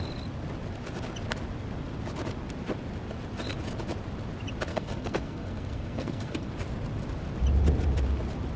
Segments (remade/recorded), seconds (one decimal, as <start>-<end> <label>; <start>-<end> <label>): 0.0-4.7 recorded; 4.7-6.5 remade; 6.5-8.6 recorded